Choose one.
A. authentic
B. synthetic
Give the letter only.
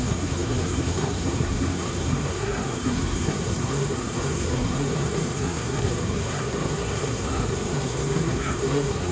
B